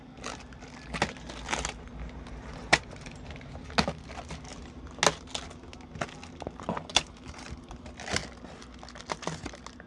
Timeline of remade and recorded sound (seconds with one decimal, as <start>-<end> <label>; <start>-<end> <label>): 0.0-2.6 recorded; 2.6-3.2 remade; 3.2-6.9 recorded; 6.9-7.7 remade; 7.7-9.9 recorded